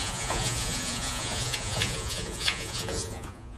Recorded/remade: remade